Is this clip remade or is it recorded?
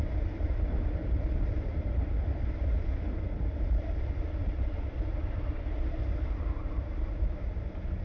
remade